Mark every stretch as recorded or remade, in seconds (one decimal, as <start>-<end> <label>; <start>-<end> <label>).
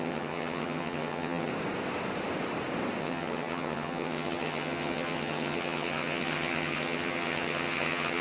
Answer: 0.0-1.5 remade; 1.5-3.0 recorded; 3.0-8.2 remade